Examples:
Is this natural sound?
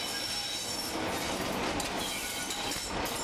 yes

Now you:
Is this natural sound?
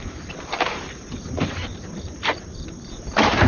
no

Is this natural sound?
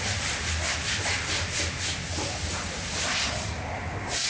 yes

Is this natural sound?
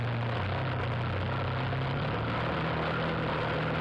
yes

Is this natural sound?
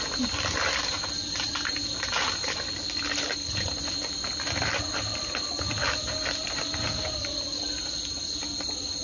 yes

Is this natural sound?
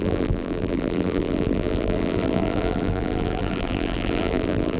no